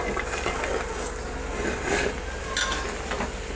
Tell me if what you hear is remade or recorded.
recorded